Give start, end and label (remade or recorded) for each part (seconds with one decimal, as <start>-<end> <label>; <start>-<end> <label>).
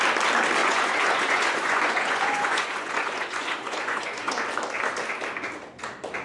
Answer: 0.0-0.6 recorded; 0.6-4.3 remade; 4.3-6.2 recorded